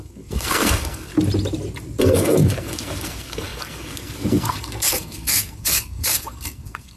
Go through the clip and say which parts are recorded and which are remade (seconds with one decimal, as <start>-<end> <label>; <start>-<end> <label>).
0.0-1.1 remade; 1.1-2.0 recorded; 2.0-7.0 remade